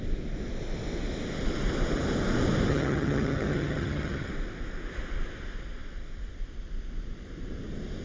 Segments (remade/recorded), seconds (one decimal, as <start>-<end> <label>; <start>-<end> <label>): 0.0-2.7 recorded; 2.7-4.3 remade; 4.3-8.0 recorded